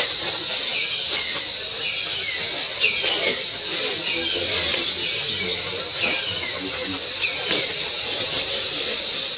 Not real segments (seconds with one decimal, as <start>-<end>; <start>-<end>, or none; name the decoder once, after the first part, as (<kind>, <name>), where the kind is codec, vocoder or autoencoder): none